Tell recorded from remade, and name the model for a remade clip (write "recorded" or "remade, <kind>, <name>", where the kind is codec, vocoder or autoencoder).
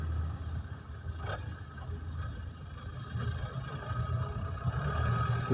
recorded